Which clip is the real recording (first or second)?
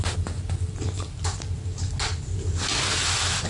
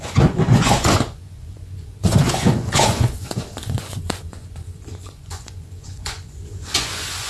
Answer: first